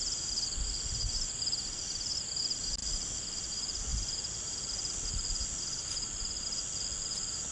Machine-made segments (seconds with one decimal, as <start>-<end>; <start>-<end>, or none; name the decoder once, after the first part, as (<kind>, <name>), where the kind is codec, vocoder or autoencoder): none